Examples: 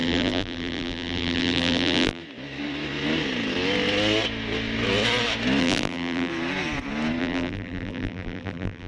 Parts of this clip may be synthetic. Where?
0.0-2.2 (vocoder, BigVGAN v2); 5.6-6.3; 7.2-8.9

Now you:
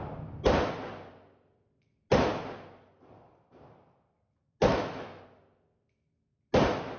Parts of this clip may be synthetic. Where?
4.7-5.2 (autoencoder, DAC-VAE)

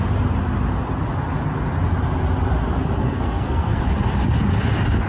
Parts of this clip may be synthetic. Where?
3.0-3.8 (codec, SNAC)

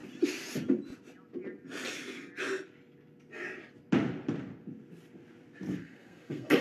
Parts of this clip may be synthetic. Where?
5.8-6.6 (codec, SNAC)

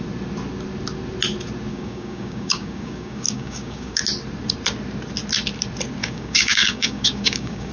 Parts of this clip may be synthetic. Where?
1.7-4.0 (codec, DAC); 6.0-7.7